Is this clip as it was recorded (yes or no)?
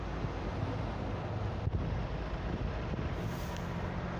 yes